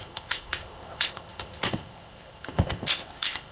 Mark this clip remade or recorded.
remade